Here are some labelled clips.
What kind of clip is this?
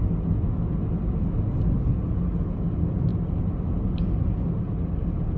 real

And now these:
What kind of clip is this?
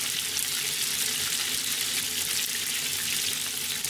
real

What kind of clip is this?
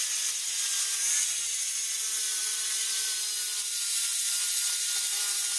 real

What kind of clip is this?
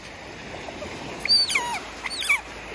real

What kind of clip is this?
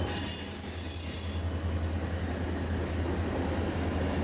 real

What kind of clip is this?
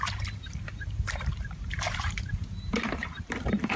fake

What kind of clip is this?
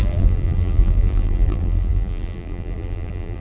fake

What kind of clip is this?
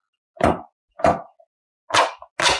real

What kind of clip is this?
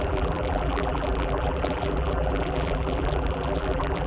fake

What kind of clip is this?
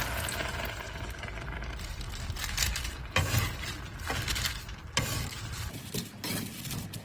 real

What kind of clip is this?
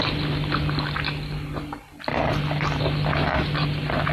fake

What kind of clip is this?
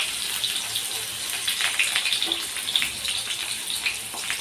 fake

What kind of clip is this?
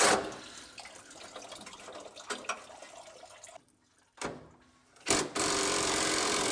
real